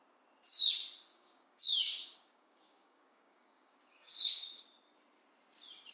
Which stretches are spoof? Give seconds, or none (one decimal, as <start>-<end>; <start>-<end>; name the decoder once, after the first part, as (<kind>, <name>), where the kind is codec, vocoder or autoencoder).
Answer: 1.1-4.6 (codec, DAC)